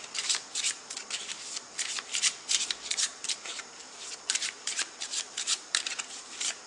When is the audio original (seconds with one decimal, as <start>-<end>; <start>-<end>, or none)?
none

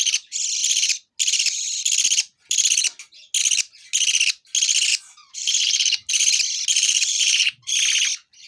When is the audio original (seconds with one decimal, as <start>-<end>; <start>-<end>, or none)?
0.0-4.9; 6.1-6.7; 7.7-8.5

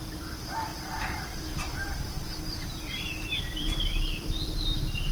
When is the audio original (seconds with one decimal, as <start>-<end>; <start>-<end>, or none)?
none